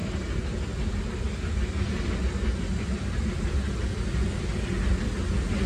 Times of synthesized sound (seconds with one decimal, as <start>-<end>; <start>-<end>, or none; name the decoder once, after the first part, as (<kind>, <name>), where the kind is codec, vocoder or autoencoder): none

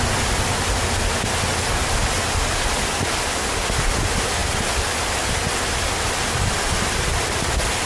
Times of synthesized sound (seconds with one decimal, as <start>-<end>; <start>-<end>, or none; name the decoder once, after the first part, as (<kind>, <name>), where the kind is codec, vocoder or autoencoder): none